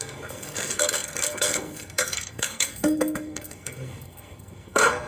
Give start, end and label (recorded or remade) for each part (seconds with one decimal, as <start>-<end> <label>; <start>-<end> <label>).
0.0-5.1 remade